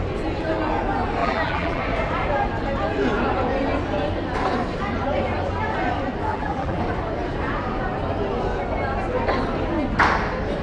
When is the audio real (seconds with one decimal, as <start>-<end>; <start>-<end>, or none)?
0.0-1.2; 1.8-6.3; 6.8-10.6